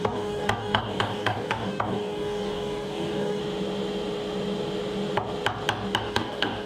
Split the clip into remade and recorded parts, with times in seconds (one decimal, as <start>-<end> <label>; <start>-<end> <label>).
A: 0.0-3.4 remade; 3.4-6.0 recorded; 6.0-6.7 remade